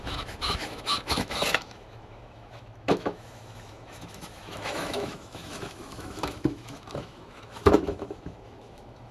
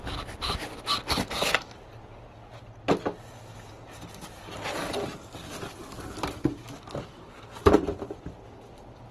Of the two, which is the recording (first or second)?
second